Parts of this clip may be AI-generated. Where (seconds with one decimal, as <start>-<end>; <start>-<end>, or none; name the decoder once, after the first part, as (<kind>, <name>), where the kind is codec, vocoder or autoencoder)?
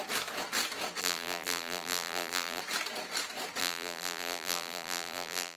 1.0-2.6 (vocoder, BigVGAN v2); 3.6-5.6